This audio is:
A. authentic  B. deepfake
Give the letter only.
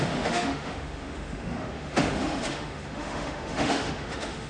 B